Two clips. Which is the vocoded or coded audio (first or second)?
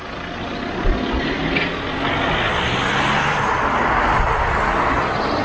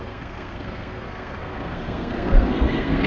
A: second